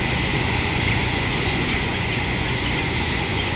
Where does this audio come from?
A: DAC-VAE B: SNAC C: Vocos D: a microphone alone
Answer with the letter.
C